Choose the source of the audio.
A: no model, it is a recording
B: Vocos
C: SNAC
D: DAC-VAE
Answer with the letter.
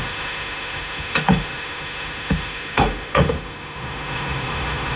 D